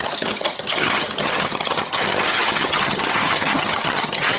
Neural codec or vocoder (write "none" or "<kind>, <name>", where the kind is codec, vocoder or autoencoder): vocoder, HiFi-GAN